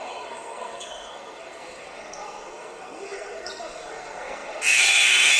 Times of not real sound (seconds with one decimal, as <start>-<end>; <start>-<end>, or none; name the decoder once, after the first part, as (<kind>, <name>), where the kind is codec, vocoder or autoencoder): 0.0-5.4 (codec, SNAC)